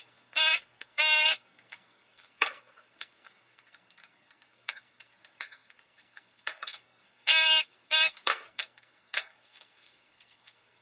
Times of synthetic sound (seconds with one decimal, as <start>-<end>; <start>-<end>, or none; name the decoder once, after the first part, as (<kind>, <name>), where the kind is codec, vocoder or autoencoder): 0.0-10.8 (codec, SNAC)

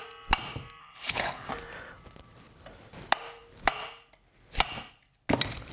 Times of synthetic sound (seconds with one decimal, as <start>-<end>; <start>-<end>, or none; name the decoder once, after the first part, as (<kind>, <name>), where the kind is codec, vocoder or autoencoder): 0.8-1.5 (codec, HILCodec)

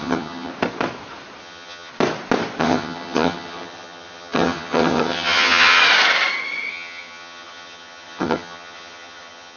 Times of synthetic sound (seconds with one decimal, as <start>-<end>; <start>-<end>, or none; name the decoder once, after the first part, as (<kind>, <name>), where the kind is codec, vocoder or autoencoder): 0.0-0.5 (vocoder, HiFi-GAN); 1.4-1.9; 2.6-5.8; 6.7-9.6

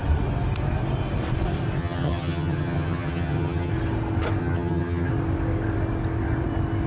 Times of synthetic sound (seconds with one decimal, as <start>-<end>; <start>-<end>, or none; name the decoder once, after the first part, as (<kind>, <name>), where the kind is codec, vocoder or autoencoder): 1.8-3.7 (vocoder, HiFi-GAN); 4.4-5.1

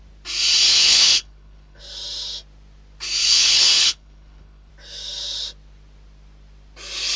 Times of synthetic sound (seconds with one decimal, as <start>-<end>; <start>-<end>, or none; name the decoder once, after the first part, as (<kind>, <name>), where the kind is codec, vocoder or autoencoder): 0.7-1.8 (codec, HILCodec); 3.2-4.7